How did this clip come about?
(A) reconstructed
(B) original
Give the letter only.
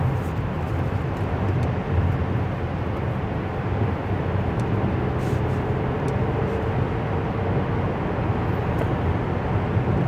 B